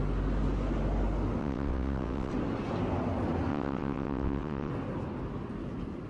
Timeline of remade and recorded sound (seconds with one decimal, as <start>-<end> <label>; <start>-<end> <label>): 0.0-1.4 recorded; 1.4-2.3 remade; 2.3-3.5 recorded; 3.5-4.7 remade; 4.7-6.1 recorded